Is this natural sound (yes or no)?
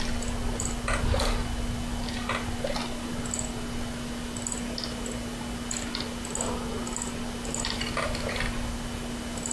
yes